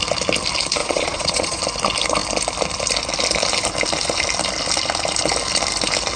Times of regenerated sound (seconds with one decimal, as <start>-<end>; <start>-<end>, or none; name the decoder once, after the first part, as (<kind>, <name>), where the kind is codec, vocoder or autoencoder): 0.8-1.6 (vocoder, Vocos)